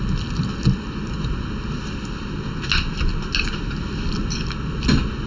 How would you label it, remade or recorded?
recorded